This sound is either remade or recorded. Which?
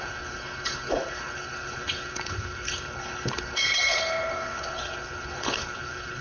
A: remade